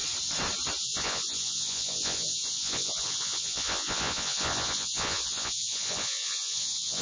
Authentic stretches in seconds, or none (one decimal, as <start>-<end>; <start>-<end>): 0.0-0.8